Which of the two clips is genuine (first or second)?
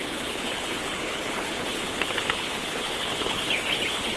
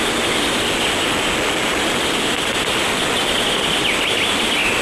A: second